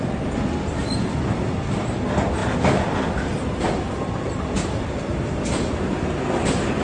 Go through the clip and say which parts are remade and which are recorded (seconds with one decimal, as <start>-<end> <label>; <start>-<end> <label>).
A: 0.0-6.8 recorded